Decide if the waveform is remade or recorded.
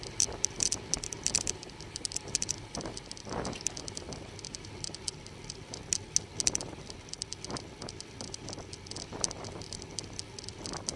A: recorded